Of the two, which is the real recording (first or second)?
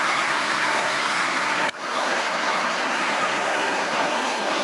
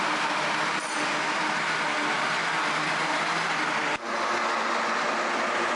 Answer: second